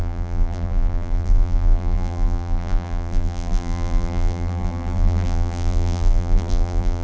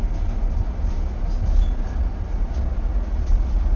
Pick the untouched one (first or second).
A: second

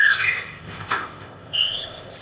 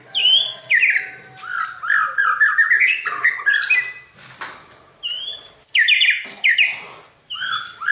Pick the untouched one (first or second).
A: second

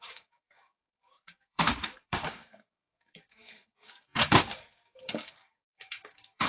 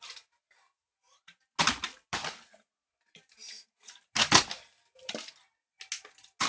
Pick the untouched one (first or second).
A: second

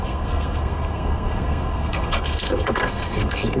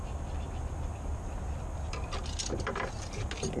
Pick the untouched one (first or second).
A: second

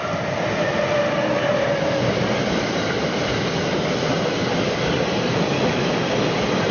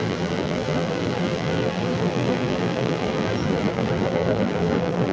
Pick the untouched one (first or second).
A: first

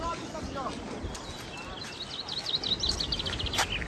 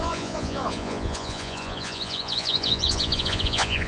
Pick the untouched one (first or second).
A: first